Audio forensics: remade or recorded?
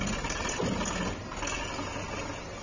recorded